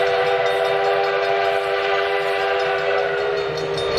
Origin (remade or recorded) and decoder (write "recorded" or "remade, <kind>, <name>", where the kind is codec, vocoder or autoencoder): recorded